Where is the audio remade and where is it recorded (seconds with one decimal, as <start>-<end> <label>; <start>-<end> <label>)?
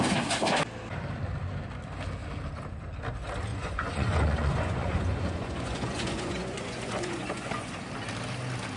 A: 0.0-3.5 recorded; 3.5-7.7 remade; 7.7-8.8 recorded